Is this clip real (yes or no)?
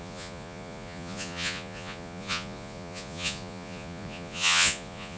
no